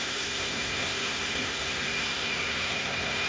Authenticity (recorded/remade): remade